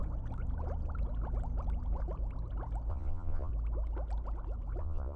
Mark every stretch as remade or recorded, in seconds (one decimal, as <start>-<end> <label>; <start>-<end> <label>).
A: 0.0-2.9 recorded; 2.9-3.5 remade; 3.5-4.8 recorded; 4.8-5.2 remade